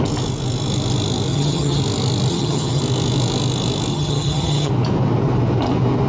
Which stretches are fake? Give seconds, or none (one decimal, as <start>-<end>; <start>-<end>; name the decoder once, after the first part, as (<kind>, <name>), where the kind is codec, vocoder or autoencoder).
1.3-1.8 (vocoder, HiFi-GAN); 2.3-2.8; 3.9-4.7